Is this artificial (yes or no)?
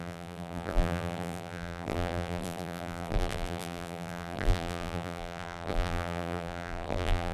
yes